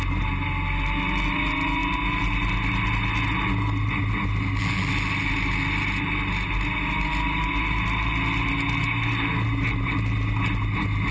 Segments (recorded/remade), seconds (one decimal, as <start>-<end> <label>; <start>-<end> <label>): 0.0-11.1 recorded